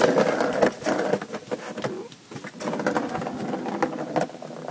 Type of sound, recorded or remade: recorded